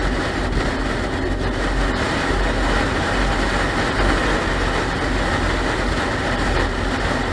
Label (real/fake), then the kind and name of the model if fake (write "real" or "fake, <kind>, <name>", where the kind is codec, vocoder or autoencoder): real